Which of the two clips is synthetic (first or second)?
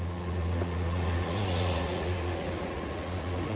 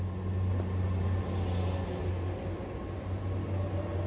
first